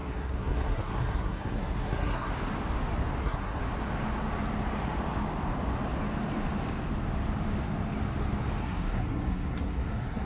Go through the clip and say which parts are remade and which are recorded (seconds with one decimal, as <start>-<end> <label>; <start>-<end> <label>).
0.0-2.3 remade; 2.3-3.2 recorded; 3.2-3.6 remade; 3.6-8.6 recorded; 8.6-10.3 remade